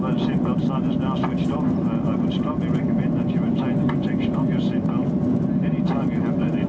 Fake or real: real